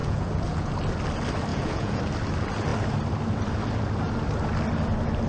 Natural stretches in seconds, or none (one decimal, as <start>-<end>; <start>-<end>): 0.7-1.5; 2.0-5.3